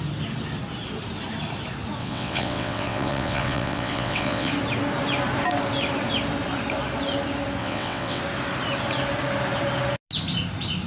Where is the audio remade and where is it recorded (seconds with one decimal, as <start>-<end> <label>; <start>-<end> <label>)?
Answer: 0.0-2.0 recorded; 2.0-4.5 remade; 4.5-7.6 recorded; 7.6-8.2 remade; 8.2-10.9 recorded